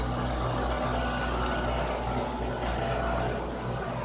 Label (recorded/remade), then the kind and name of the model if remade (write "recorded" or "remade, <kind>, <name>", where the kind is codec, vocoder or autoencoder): recorded